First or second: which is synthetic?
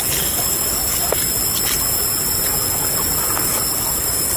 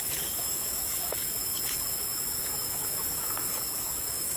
second